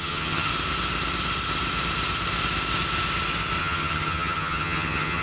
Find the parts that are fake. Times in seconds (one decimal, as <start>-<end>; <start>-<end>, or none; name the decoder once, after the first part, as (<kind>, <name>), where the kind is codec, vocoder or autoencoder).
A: 0.0-0.5 (vocoder, HiFi-GAN); 3.6-5.2